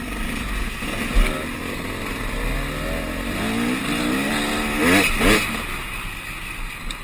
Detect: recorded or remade recorded